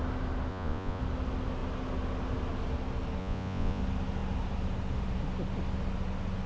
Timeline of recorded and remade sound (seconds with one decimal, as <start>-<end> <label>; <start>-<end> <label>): 0.0-0.5 recorded; 0.5-1.0 remade; 1.0-3.2 recorded; 3.2-3.8 remade; 3.8-6.5 recorded